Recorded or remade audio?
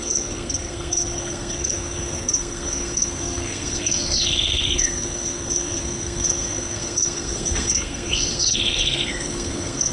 remade